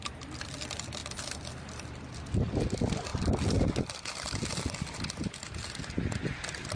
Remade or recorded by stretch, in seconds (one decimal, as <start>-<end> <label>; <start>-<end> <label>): 0.0-3.1 recorded; 3.1-4.1 remade; 4.1-6.8 recorded